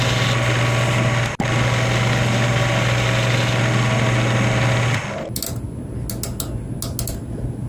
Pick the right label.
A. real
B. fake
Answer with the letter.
A